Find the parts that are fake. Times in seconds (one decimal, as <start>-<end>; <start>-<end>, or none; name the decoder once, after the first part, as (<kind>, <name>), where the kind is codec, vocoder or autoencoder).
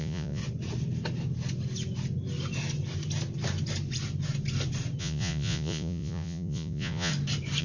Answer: 0.0-0.4 (vocoder, Vocos); 5.0-7.1